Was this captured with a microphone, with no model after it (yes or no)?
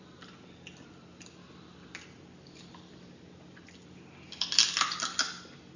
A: yes